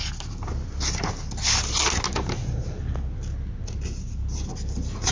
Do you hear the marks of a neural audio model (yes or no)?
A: no